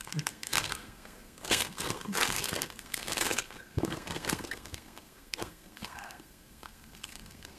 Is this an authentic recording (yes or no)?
no